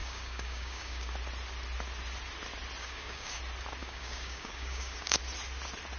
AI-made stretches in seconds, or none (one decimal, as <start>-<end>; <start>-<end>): 0.0-1.1; 2.8-3.4; 3.8-5.2